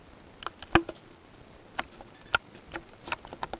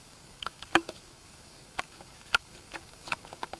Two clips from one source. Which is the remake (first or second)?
second